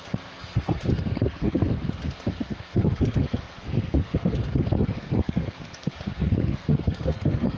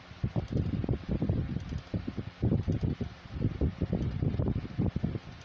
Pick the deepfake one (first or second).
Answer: first